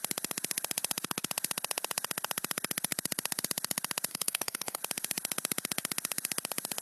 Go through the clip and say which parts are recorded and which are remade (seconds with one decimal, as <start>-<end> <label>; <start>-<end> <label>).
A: 0.0-4.1 recorded; 4.1-4.8 remade; 4.8-6.8 recorded